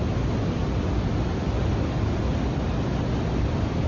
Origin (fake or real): real